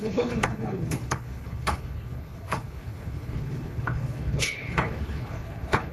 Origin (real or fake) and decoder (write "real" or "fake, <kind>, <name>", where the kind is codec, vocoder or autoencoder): fake, codec, HILCodec